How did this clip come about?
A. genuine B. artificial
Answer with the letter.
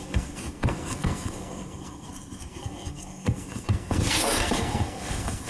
B